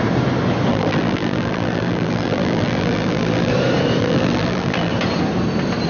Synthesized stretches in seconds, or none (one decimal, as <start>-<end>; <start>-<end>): 0.7-3.5; 4.0-4.9